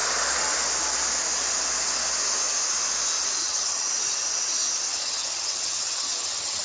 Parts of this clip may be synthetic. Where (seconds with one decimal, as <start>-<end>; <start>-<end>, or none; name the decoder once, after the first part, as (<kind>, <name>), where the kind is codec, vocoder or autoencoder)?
3.4-3.9 (vocoder, HiFi-GAN); 4.9-6.6